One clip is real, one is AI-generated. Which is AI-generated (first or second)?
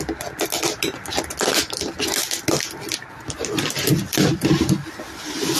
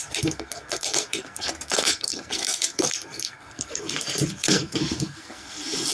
second